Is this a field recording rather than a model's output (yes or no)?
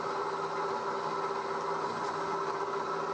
yes